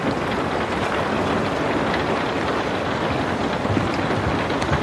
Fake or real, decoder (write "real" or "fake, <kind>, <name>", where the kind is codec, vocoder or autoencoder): real